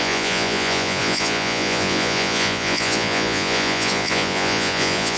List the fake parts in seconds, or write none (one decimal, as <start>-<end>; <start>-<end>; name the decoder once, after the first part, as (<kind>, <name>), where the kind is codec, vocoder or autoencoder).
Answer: 0.0-5.2 (vocoder, Vocos)